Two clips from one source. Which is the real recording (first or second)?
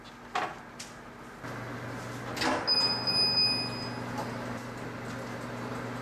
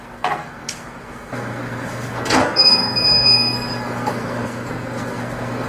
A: first